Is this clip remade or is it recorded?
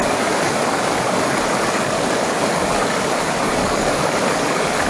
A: remade